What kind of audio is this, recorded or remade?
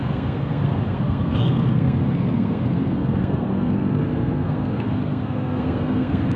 remade